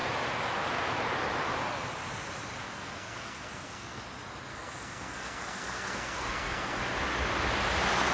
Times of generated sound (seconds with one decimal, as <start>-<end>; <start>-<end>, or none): 2.6-4.0; 4.5-6.8